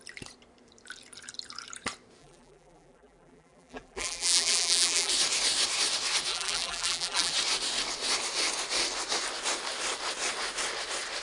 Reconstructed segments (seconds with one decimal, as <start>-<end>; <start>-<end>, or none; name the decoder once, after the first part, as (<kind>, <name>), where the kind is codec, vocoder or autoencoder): 2.2-5.1 (vocoder, BigVGAN v2); 6.3-7.3